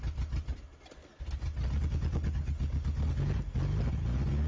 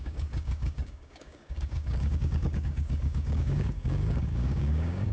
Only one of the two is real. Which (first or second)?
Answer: first